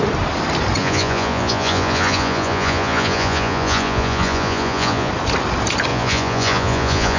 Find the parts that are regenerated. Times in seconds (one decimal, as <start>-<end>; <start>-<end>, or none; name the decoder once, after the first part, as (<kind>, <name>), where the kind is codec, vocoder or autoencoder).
0.8-5.1 (vocoder, Vocos); 5.9-7.2